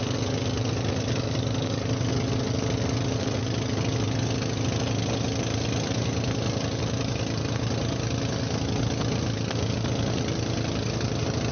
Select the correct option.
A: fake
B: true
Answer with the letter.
B